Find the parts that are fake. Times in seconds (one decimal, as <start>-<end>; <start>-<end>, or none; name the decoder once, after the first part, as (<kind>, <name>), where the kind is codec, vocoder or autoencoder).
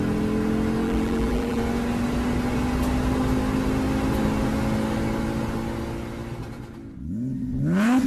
0.8-1.6 (vocoder, BigVGAN v2)